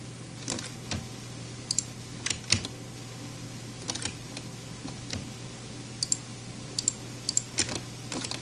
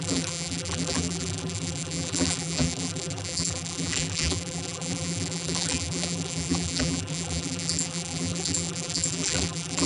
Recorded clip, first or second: first